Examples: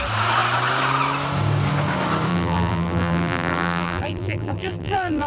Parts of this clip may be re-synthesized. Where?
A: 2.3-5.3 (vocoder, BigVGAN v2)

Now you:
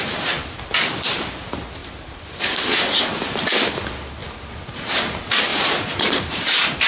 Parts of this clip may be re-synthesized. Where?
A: 1.8-3.2 (vocoder, BigVGAN v2); 4.2-5.0; 5.5-6.5

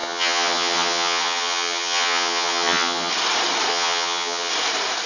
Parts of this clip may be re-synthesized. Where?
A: 0.0-3.1 (vocoder, HiFi-GAN); 3.7-4.5